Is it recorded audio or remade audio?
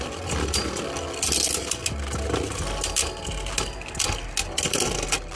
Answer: recorded